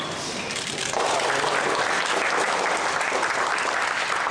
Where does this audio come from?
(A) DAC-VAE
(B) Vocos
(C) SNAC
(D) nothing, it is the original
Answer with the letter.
D